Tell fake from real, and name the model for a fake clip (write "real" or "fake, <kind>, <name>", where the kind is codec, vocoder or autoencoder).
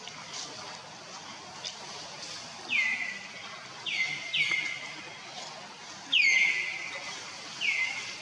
real